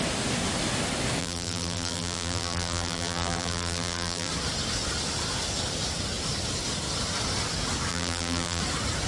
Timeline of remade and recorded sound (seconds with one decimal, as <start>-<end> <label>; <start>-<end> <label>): 0.0-1.2 recorded; 1.2-4.3 remade; 4.3-7.9 recorded; 7.9-8.6 remade; 8.6-9.1 recorded